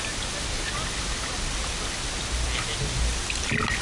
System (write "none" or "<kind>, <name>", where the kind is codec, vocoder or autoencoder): none